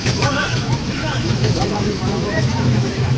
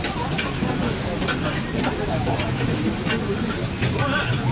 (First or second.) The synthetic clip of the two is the first